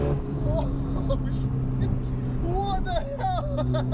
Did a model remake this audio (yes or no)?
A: no